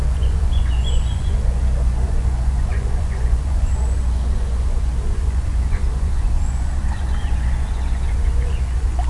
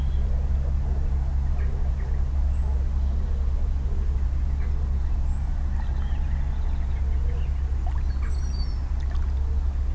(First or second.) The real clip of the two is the second